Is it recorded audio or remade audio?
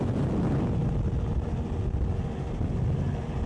recorded